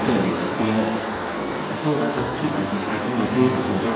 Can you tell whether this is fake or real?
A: fake